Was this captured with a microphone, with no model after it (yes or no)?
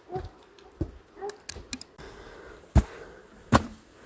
yes